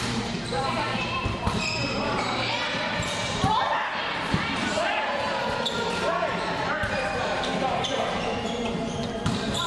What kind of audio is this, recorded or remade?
remade